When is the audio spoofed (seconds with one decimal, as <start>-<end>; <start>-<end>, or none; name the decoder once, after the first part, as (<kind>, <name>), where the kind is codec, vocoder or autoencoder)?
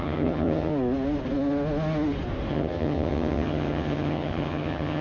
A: 0.0-0.7 (vocoder, HiFi-GAN); 2.5-5.0